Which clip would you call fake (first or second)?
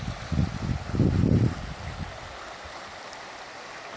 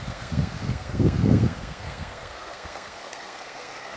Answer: second